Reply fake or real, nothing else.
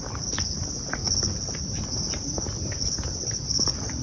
real